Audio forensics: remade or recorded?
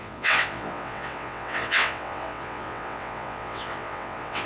remade